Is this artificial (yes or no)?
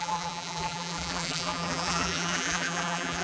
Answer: yes